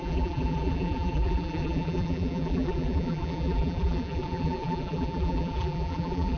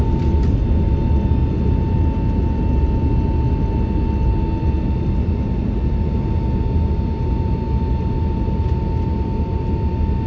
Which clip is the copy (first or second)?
first